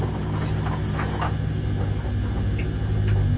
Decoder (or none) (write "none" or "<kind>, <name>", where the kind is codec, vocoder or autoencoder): none